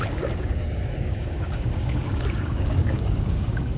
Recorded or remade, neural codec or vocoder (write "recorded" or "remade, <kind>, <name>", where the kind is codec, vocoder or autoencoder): remade, codec, DAC